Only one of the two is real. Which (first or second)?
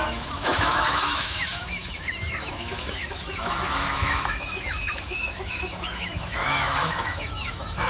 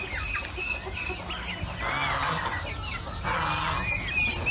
second